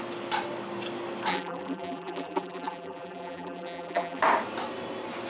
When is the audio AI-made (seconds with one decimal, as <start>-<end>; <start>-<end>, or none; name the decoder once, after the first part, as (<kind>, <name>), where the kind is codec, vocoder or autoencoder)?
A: 1.3-4.2 (vocoder, BigVGAN v2)